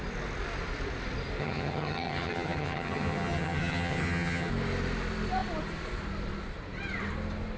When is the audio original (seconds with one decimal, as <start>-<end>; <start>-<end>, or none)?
0.0-1.4; 4.5-7.6